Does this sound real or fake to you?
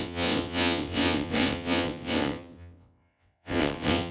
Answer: fake